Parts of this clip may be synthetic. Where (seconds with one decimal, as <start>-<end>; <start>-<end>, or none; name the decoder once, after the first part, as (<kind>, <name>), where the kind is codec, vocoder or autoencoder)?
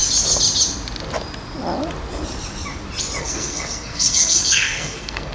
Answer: 3.2-5.3 (codec, SNAC)